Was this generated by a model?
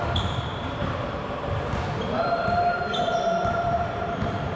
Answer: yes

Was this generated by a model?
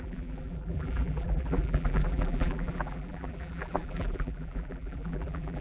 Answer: yes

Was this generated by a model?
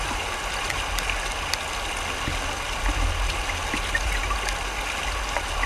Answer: no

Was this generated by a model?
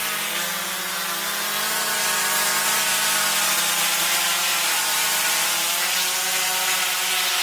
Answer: yes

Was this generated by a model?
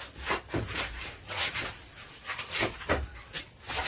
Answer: no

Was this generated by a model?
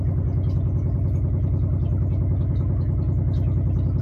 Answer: no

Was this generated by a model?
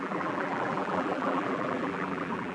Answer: yes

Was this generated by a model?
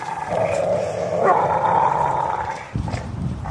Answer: yes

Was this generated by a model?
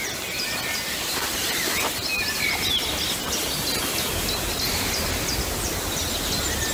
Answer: no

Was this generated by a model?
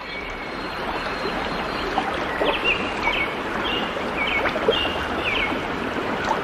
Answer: yes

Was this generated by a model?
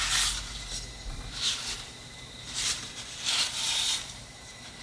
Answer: yes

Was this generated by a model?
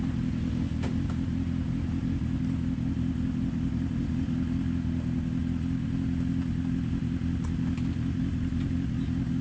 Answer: no